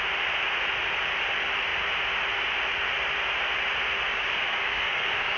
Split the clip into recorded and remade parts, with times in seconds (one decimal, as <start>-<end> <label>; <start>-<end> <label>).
0.0-4.1 recorded; 4.1-5.4 remade